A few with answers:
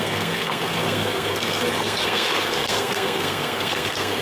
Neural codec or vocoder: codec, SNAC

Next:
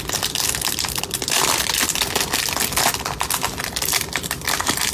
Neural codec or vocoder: none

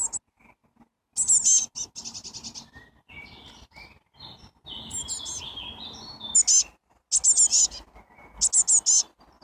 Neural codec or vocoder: none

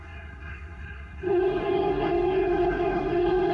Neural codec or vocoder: codec, SNAC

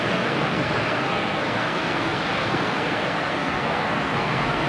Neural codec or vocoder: codec, SNAC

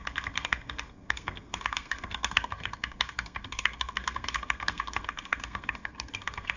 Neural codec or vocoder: codec, SNAC